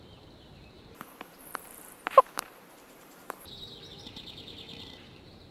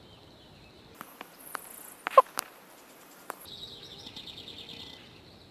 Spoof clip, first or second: first